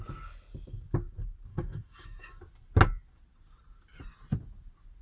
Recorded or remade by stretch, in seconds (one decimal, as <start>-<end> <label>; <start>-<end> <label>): 0.0-1.5 recorded; 1.5-2.4 remade; 2.4-5.0 recorded